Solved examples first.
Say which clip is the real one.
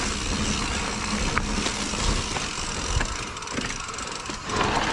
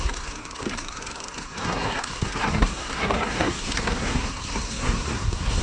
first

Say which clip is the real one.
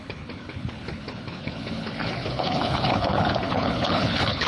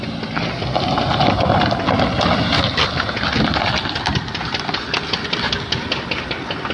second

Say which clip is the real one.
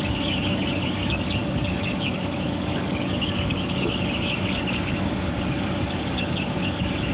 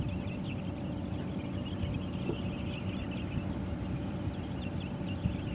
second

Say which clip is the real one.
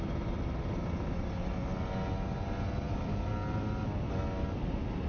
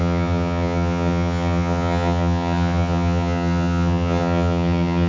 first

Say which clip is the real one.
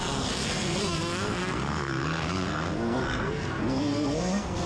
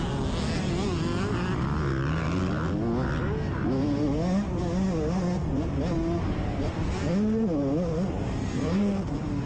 second